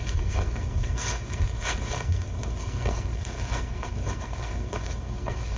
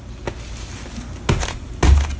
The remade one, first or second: first